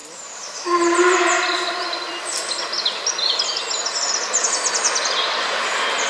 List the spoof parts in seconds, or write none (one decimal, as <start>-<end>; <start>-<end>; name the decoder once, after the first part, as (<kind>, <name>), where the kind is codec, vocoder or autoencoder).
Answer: 0.0-2.1 (vocoder, BigVGAN v2)